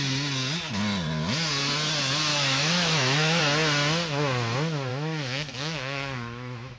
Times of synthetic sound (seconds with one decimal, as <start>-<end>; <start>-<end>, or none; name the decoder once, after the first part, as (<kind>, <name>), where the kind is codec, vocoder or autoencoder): 2.3-3.4 (autoencoder, DAC-VAE); 4.9-6.8